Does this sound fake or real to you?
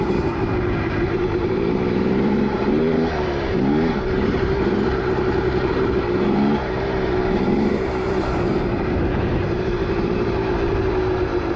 fake